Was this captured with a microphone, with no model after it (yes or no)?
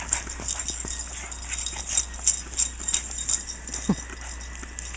yes